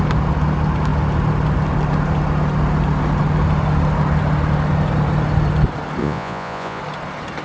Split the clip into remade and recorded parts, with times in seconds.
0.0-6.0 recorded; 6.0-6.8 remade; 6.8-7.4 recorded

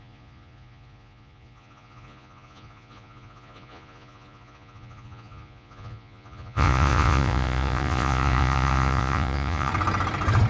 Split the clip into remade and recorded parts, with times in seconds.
0.0-9.7 remade; 9.7-10.5 recorded